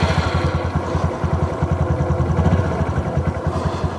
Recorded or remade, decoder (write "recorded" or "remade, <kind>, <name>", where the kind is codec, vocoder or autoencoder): recorded